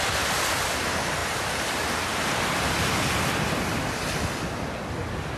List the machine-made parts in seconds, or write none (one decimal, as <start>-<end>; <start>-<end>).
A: none